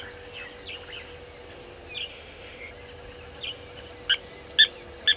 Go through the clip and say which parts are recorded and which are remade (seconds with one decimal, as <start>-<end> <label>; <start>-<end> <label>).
0.0-2.1 recorded; 2.1-2.7 remade; 2.7-5.2 recorded